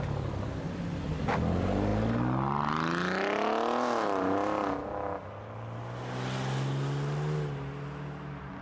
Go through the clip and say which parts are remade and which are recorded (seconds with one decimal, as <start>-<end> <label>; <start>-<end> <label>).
0.0-8.6 recorded

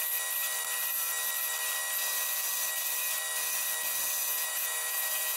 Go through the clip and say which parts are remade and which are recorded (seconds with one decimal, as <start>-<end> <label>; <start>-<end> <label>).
0.0-4.2 recorded; 4.2-5.4 remade

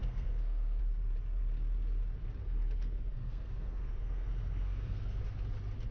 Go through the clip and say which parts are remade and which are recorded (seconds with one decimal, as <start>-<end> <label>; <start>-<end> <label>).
0.0-0.8 remade; 0.8-2.4 recorded; 2.4-5.2 remade; 5.2-5.9 recorded

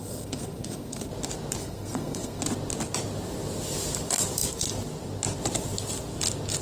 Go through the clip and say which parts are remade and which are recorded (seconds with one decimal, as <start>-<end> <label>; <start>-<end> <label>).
0.0-1.1 remade; 1.1-1.6 recorded; 1.6-2.4 remade; 2.4-6.6 recorded

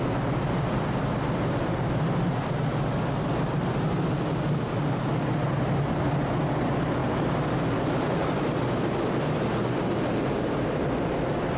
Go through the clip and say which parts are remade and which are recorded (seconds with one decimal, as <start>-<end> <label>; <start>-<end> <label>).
0.0-11.6 recorded

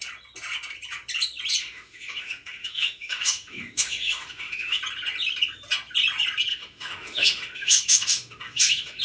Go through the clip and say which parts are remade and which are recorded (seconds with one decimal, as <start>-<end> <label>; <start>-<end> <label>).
0.0-1.6 recorded; 1.6-4.8 remade; 4.8-6.5 recorded; 6.5-9.0 remade

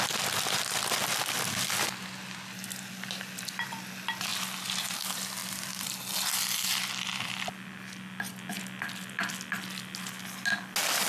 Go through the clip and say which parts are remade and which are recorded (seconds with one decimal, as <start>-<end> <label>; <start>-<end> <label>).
0.0-11.1 recorded

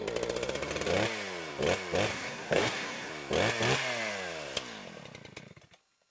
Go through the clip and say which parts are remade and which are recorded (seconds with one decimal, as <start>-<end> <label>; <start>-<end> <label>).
0.0-2.1 recorded; 2.1-3.1 remade; 3.1-6.1 recorded